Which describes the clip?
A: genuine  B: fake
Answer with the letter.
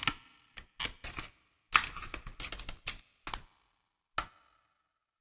A